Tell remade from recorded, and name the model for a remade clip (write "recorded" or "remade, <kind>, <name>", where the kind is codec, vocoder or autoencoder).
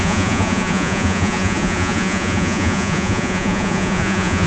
remade, vocoder, Vocos